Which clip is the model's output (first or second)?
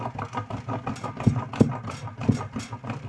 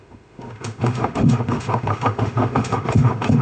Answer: second